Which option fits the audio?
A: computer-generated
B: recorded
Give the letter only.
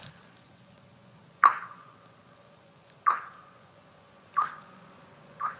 A